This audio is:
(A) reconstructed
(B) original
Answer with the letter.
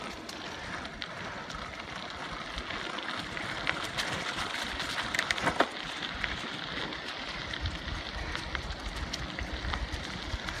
B